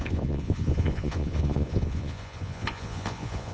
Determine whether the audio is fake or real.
fake